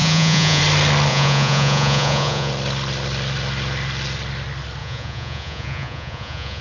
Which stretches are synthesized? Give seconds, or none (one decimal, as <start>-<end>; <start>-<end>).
0.0-0.6; 1.1-2.5; 4.8-6.6

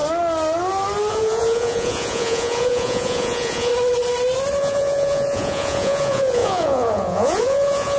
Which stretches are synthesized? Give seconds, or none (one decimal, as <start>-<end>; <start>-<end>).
1.1-3.7; 4.6-8.0

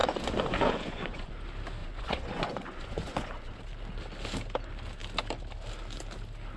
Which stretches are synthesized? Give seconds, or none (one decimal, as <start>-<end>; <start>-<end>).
0.0-1.3; 1.8-3.6

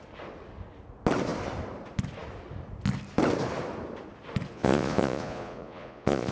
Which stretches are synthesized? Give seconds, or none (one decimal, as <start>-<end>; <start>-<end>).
4.5-6.3

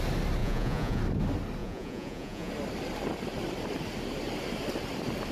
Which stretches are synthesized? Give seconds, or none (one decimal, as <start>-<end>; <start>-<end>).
0.4-1.0; 1.6-2.5

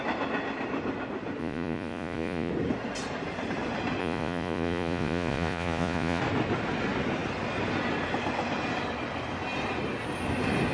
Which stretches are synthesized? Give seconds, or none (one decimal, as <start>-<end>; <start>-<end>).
1.4-2.5; 4.0-6.2